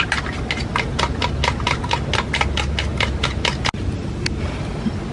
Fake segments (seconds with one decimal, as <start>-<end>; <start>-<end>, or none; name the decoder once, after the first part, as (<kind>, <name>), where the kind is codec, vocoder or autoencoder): none